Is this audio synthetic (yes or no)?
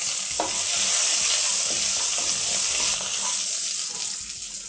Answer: no